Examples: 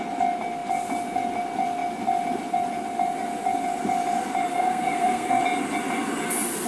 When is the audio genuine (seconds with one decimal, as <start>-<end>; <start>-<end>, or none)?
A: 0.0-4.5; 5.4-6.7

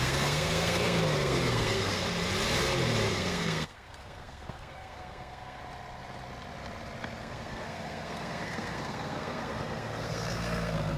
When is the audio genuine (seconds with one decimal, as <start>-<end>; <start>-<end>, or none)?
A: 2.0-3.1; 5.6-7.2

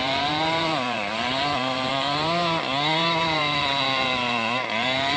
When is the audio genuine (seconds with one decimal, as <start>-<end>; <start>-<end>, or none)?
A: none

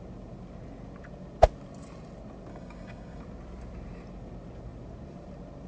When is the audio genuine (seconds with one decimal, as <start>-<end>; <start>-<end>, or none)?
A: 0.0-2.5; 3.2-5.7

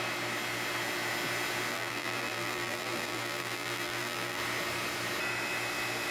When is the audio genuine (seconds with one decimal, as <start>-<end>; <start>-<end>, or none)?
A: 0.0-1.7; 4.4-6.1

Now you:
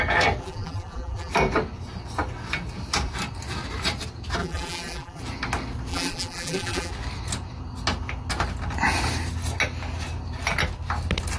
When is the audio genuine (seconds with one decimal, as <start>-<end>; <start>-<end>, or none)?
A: 0.0-0.4; 1.3-4.4; 5.2-5.9; 6.9-11.4

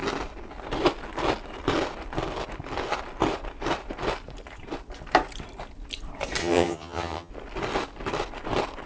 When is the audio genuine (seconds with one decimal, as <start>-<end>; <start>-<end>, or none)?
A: 0.0-6.4; 7.3-8.9

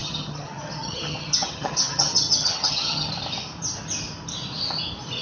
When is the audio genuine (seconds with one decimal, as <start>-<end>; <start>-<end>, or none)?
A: 3.1-5.2